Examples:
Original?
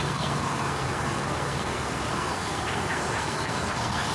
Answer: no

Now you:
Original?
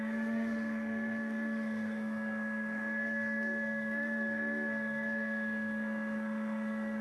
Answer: no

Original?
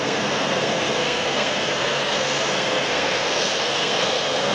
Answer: no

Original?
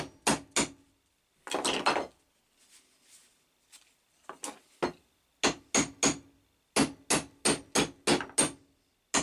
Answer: yes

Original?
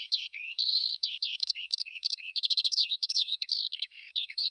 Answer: no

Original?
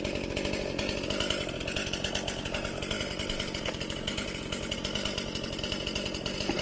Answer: yes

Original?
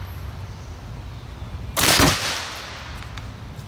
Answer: yes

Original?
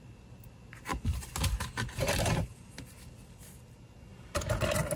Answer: yes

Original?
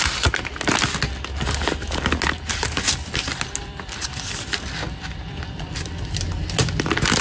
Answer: yes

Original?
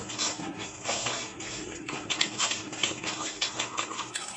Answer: no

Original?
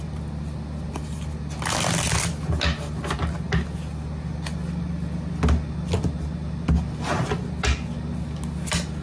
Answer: yes